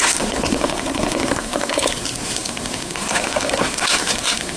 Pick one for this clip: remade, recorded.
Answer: remade